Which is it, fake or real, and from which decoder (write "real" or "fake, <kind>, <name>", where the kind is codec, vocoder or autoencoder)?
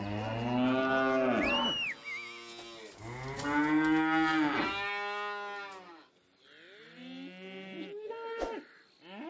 real